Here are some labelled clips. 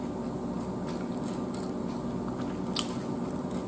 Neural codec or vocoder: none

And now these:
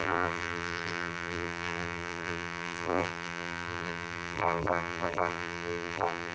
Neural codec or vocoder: vocoder, BigVGAN v2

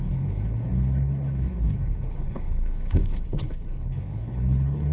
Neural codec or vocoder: codec, HILCodec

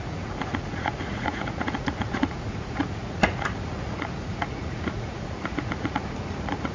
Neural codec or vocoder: vocoder, Vocos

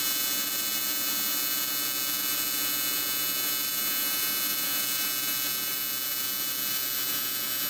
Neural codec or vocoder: none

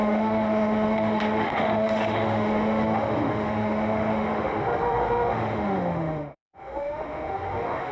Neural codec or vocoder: autoencoder, DAC-VAE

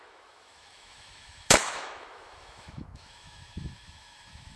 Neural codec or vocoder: autoencoder, DAC-VAE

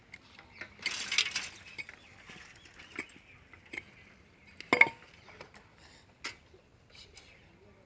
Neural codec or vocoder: none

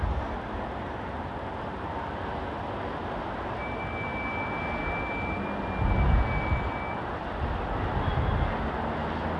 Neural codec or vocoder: none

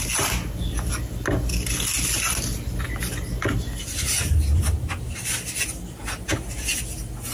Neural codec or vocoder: none